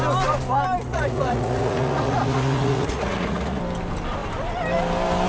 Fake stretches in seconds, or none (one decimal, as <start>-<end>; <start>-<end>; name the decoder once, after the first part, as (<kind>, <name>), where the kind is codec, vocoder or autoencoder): 0.9-3.6 (vocoder, Vocos)